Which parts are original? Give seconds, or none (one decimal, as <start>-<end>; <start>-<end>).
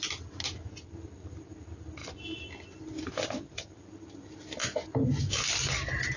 0.0-6.2